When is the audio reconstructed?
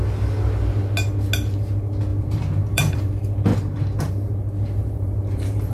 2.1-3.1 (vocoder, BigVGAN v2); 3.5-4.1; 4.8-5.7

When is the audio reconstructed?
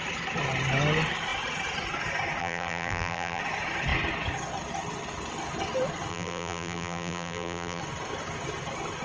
2.4-3.4 (vocoder, BigVGAN v2); 6.1-7.8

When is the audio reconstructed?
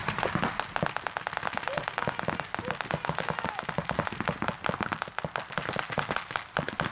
0.0-0.5 (vocoder, BigVGAN v2)